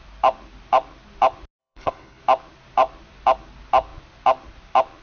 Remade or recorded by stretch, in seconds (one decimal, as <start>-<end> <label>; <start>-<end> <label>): 0.0-1.6 recorded; 1.6-2.2 remade; 2.2-5.0 recorded